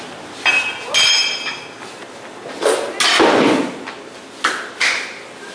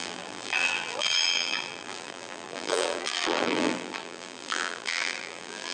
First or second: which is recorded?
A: first